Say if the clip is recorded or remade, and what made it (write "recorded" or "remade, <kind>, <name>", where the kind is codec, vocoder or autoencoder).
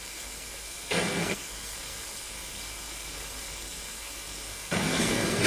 remade, codec, SNAC